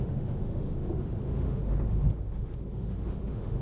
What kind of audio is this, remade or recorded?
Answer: remade